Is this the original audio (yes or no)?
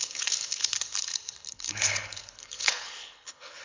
no